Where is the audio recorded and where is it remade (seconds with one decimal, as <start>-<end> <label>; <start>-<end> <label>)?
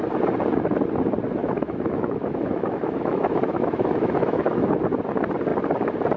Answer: 0.0-1.4 recorded; 1.4-4.7 remade; 4.7-6.2 recorded